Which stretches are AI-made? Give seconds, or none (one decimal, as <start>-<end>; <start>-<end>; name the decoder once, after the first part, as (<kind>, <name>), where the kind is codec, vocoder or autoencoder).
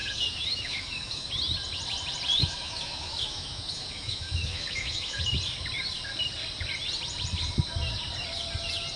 0.0-1.3 (autoencoder, DAC-VAE); 2.4-5.2